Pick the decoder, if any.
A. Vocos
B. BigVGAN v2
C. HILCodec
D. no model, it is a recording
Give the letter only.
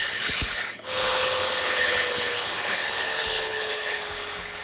C